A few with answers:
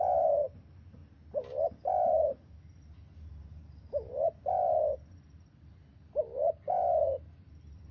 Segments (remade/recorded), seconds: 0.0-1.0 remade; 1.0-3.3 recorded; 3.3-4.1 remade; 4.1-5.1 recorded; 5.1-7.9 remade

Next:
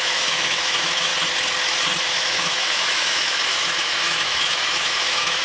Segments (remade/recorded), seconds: 0.0-1.1 remade; 1.1-2.0 recorded; 2.0-5.4 remade

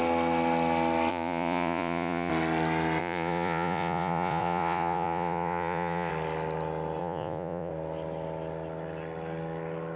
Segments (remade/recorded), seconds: 0.0-1.1 recorded; 1.1-2.3 remade; 2.3-3.0 recorded; 3.0-6.1 remade; 6.1-7.0 recorded; 7.0-7.7 remade; 7.7-10.0 recorded

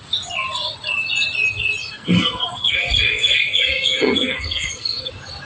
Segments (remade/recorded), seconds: 0.0-1.8 recorded; 1.8-5.1 remade; 5.1-5.5 recorded